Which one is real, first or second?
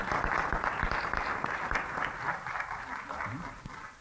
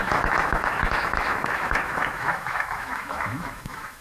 first